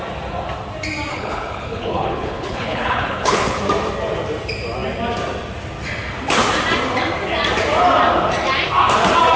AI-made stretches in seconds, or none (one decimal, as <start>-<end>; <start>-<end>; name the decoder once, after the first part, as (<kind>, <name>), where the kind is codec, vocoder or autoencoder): 1.1-3.6 (codec, HILCodec)